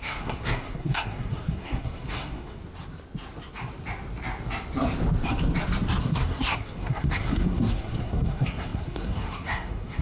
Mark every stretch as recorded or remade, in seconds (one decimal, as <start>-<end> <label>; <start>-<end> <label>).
0.0-2.6 remade; 2.6-6.0 recorded; 6.0-10.0 remade